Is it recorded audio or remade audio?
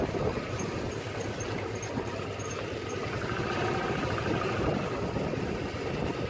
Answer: recorded